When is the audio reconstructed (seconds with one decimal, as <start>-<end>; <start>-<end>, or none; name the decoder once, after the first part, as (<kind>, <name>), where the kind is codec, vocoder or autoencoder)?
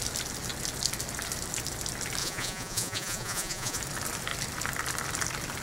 2.2-3.8 (vocoder, Vocos)